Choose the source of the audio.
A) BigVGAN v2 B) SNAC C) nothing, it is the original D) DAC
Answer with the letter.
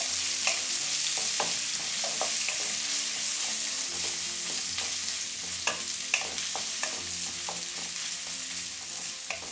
C